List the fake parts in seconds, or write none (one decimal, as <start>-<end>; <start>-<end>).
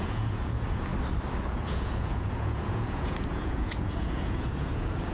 0.0-0.9; 1.4-5.1